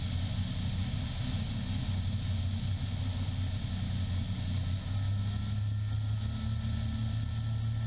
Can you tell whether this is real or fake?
real